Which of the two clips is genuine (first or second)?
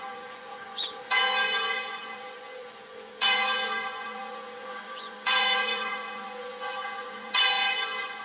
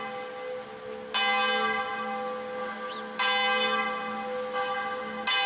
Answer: second